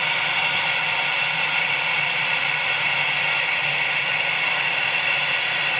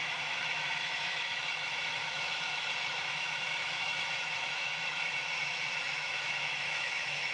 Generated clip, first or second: second